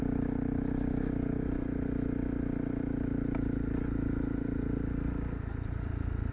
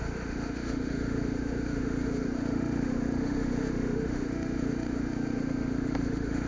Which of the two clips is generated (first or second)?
second